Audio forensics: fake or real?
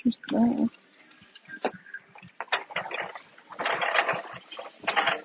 real